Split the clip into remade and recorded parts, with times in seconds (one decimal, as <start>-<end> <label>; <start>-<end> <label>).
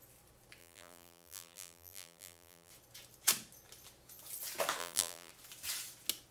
0.0-0.6 recorded; 0.6-2.7 remade; 2.7-4.8 recorded; 4.8-5.3 remade; 5.3-6.3 recorded